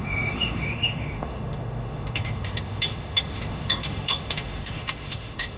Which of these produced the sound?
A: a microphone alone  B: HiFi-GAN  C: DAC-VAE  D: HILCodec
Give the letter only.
C